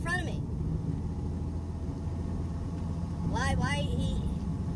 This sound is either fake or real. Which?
real